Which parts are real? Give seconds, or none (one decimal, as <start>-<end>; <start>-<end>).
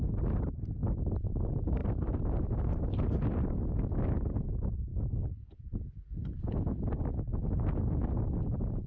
0.0-8.9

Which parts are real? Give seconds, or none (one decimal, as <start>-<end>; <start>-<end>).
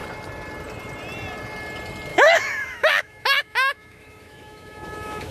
0.0-2.1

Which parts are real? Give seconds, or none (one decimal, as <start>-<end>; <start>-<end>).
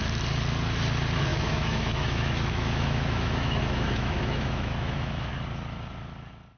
0.0-1.3; 5.3-6.6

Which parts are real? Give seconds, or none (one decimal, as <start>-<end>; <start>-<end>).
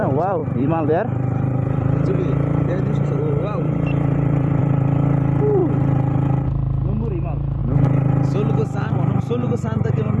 5.6-6.5; 7.6-8.9